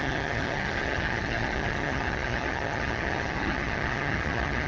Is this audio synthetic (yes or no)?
yes